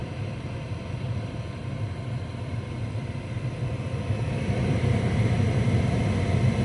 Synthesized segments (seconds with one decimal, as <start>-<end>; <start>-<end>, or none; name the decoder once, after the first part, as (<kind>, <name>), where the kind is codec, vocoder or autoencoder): 0.0-1.2 (vocoder, BigVGAN v2); 1.6-2.5; 4.6-5.8